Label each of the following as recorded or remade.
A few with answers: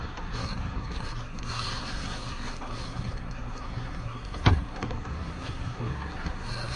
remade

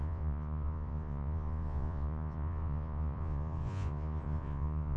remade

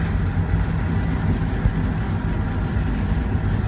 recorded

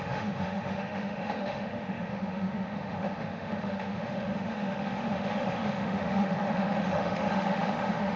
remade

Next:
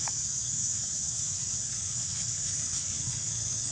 remade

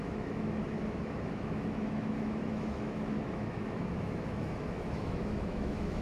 remade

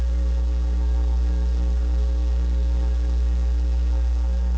remade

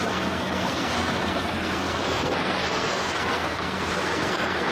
remade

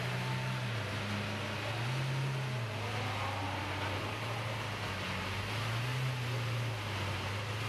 recorded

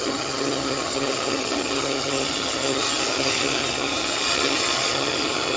remade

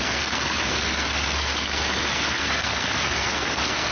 remade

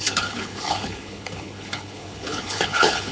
remade